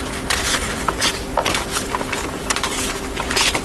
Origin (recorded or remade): recorded